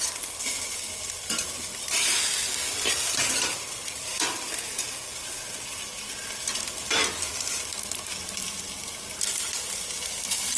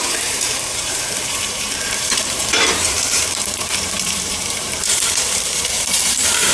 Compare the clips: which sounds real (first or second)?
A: first